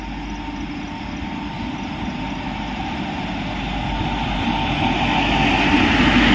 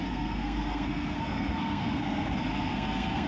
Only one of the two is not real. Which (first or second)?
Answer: second